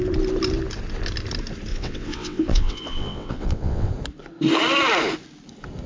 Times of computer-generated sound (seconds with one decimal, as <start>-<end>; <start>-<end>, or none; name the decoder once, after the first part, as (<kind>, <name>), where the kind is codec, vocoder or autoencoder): 1.7-3.9 (vocoder, WaveNeXt)